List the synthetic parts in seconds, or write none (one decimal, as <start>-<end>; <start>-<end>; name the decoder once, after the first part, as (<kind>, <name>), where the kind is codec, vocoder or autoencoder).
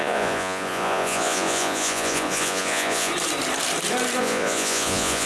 0.0-3.1 (vocoder, Vocos); 4.2-5.3